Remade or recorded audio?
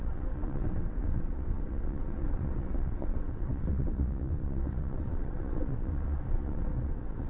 remade